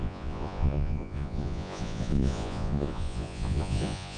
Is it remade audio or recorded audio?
remade